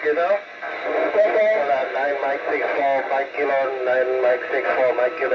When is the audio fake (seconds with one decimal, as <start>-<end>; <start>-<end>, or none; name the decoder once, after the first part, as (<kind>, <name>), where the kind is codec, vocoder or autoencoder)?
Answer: none